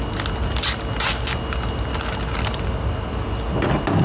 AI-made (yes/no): no